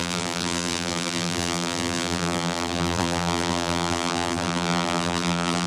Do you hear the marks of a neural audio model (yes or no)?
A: yes